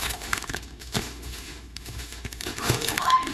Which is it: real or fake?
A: fake